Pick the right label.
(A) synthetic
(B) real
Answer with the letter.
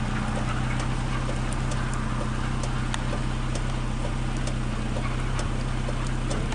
B